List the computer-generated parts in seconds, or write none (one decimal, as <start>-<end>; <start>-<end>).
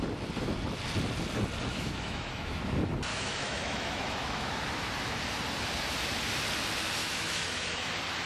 1.7-2.6; 3.1-4.6; 7.0-7.9